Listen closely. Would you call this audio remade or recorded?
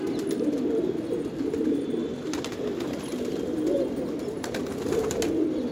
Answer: recorded